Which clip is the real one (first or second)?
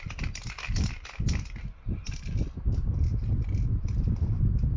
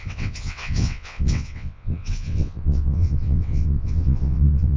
first